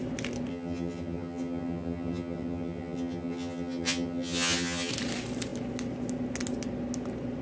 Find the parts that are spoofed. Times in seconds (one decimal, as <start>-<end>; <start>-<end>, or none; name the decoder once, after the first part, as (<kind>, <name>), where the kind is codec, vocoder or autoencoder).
0.5-4.9 (vocoder, HiFi-GAN)